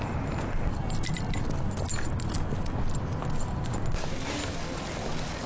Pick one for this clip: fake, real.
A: real